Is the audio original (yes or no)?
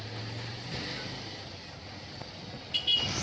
yes